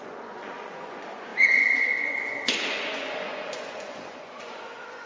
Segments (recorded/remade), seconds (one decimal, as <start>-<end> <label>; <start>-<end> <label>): 0.0-5.1 remade

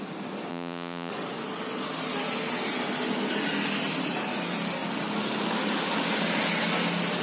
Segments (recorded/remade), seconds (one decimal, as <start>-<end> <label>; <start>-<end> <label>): 0.0-0.5 recorded; 0.5-1.1 remade; 1.1-7.2 recorded

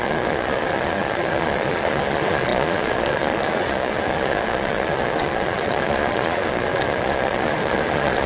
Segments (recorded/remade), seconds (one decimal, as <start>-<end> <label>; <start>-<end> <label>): 0.0-8.3 remade

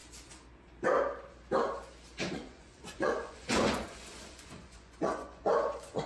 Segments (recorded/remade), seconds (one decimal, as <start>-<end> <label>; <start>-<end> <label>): 0.0-2.3 recorded; 2.3-6.1 remade